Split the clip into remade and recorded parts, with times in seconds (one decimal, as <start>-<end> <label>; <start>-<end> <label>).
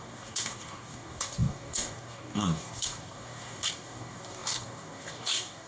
0.0-5.7 remade